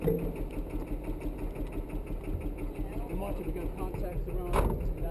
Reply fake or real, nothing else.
real